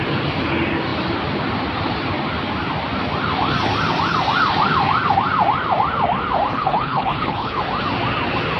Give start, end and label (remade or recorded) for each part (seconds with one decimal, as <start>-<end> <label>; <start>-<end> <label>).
0.0-6.5 recorded; 6.5-7.6 remade; 7.6-8.6 recorded